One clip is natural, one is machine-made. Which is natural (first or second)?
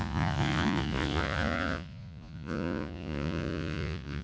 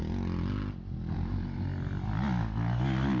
second